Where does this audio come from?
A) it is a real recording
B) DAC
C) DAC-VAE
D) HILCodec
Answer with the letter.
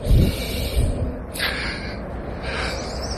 A